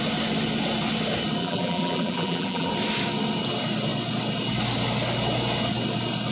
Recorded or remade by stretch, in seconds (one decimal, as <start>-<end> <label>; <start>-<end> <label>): 0.0-1.4 recorded; 1.4-2.7 remade; 2.7-6.3 recorded